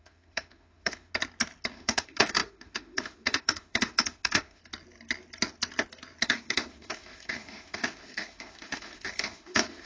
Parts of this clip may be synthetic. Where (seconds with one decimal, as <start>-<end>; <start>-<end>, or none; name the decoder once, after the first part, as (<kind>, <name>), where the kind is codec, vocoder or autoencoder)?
0.0-1.1 (autoencoder, DAC-VAE); 1.7-4.6; 6.2-9.9